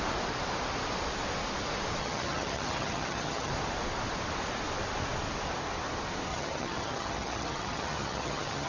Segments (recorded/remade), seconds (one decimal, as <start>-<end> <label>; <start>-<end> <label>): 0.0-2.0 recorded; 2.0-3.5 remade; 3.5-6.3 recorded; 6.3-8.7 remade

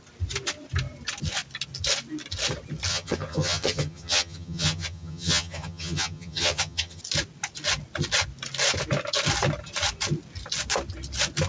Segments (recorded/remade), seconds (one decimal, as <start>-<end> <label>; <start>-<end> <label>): 0.0-2.9 recorded; 2.9-7.0 remade; 7.0-11.5 recorded

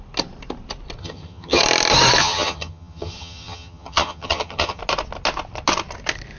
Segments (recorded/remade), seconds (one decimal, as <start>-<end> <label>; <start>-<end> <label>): 0.0-1.0 recorded; 1.0-1.6 remade; 1.6-2.2 recorded; 2.2-4.8 remade; 4.8-6.4 recorded